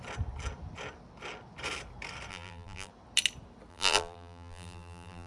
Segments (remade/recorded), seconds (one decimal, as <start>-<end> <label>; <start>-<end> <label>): 0.0-2.3 recorded; 2.3-2.9 remade; 2.9-3.7 recorded; 3.7-5.3 remade